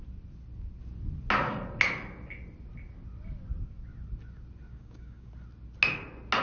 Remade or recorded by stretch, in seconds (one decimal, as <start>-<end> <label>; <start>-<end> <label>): 0.0-4.7 recorded; 4.7-5.3 remade; 5.3-6.4 recorded

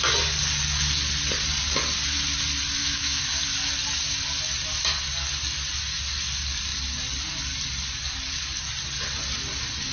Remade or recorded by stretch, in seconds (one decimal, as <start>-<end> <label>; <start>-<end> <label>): 0.0-2.8 recorded; 2.8-3.4 remade; 3.4-9.9 recorded

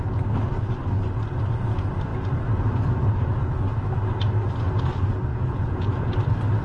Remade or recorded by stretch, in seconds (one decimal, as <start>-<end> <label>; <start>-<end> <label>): 0.0-5.3 recorded; 5.3-6.1 remade; 6.1-6.6 recorded

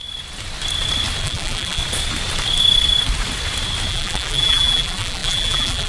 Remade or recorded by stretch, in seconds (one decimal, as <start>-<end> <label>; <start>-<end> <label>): 0.0-1.2 recorded; 1.2-1.8 remade; 1.8-3.9 recorded; 3.9-5.9 remade

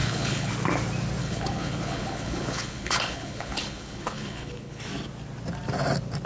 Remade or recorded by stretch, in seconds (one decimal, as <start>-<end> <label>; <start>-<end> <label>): 0.0-0.5 remade; 0.5-1.2 recorded; 1.2-4.8 remade; 4.8-6.3 recorded

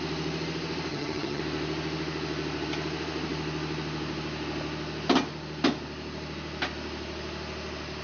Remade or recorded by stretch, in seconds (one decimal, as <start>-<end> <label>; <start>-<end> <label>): 0.0-0.9 recorded; 0.9-1.4 remade; 1.4-8.0 recorded

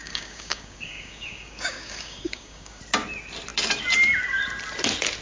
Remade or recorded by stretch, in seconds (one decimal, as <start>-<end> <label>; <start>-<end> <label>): 0.0-2.8 remade; 2.8-5.2 recorded

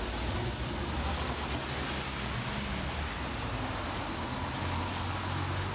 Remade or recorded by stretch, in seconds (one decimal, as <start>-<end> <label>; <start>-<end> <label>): 0.0-5.7 recorded